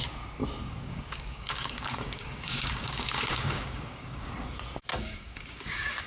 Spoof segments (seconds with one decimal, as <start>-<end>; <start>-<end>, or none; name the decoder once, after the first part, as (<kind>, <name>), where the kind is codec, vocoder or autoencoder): 0.6-4.3 (codec, DAC); 4.9-6.1

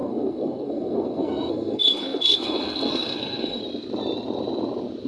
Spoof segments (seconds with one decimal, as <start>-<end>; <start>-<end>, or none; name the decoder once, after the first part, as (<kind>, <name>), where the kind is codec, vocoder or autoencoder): 0.0-3.6 (codec, SNAC)

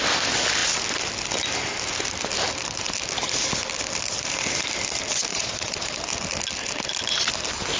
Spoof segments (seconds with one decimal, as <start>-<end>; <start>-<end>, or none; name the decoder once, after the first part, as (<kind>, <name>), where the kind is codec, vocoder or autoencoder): 5.3-5.9 (vocoder, Vocos)

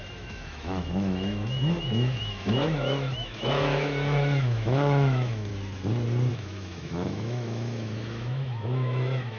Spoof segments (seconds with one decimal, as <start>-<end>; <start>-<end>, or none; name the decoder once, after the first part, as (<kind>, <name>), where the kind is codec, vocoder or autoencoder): 0.0-5.5 (autoencoder, DAC-VAE); 6.3-9.4

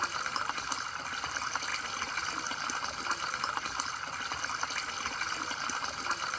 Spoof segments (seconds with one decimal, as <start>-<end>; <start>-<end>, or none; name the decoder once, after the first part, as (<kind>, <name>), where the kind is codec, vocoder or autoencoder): none

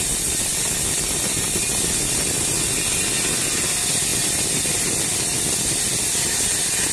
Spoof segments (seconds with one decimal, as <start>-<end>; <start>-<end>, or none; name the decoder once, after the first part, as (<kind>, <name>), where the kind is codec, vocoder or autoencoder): none

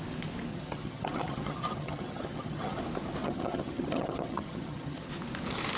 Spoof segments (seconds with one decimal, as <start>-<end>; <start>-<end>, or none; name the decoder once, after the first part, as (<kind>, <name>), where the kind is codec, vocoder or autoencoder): 0.5-2.8 (vocoder, HiFi-GAN); 3.2-5.1